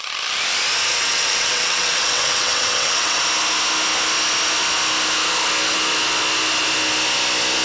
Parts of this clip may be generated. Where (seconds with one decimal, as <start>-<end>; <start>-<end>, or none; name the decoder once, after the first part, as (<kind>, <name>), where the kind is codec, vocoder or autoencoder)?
0.9-3.2 (vocoder, WaveNeXt)